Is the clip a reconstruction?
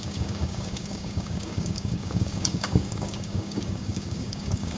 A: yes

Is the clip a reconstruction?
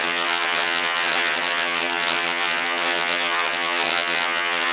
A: yes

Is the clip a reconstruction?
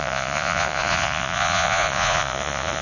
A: yes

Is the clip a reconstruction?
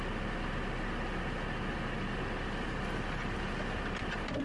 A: no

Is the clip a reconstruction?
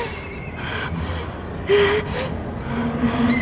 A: no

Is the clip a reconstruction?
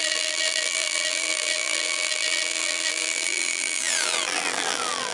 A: yes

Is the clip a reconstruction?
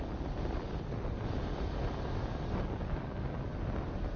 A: no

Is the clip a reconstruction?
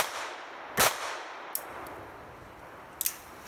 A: no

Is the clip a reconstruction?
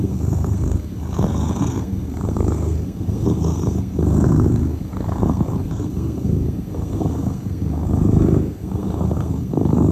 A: yes